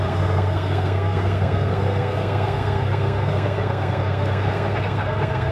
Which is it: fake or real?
fake